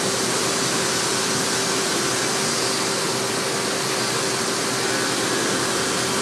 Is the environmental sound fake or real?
real